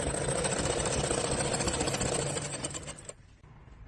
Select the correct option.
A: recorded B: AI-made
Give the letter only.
A